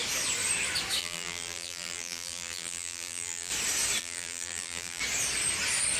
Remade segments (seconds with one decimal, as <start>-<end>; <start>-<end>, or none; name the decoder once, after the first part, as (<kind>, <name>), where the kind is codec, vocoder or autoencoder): 1.0-3.5 (vocoder, BigVGAN v2); 4.0-5.0